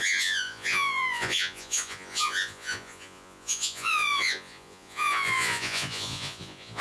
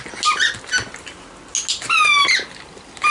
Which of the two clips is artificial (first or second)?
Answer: first